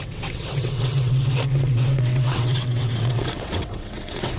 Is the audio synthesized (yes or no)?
yes